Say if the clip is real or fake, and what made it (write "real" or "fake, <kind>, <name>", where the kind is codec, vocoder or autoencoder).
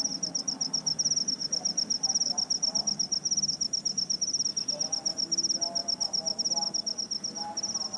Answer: real